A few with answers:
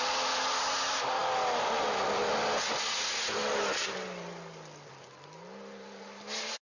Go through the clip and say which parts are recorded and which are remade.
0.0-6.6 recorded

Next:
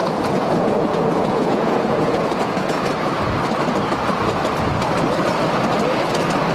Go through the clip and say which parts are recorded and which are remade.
0.0-2.9 remade; 2.9-6.5 recorded

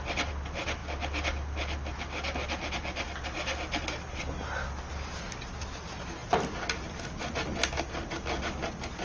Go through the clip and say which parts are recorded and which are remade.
0.0-9.0 recorded

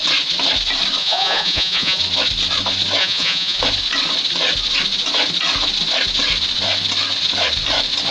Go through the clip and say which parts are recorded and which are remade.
0.0-1.0 recorded; 1.0-2.0 remade; 2.0-3.0 recorded; 3.0-3.6 remade; 3.6-8.1 recorded

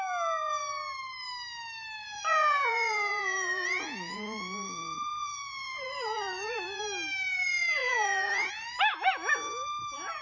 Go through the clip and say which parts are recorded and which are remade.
0.0-2.0 recorded; 2.0-6.8 remade; 6.8-7.8 recorded; 7.8-8.5 remade; 8.5-10.2 recorded

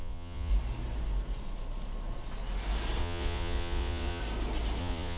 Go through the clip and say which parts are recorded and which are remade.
0.0-0.5 remade; 0.5-3.0 recorded; 3.0-4.2 remade; 4.2-4.8 recorded; 4.8-5.2 remade

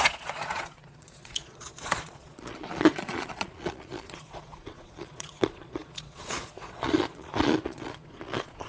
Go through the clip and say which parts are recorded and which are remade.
0.0-8.7 remade

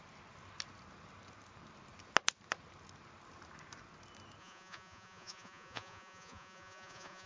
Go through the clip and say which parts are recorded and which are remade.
0.0-4.4 recorded; 4.4-7.3 remade